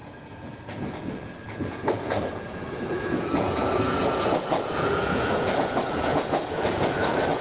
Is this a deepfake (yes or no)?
yes